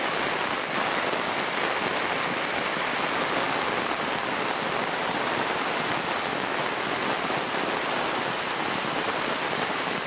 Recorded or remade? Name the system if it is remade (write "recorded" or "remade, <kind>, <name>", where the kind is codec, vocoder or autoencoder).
recorded